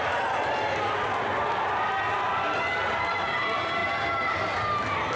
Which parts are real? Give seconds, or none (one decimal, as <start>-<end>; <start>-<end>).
0.0-5.2